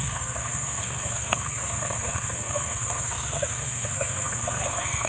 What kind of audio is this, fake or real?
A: fake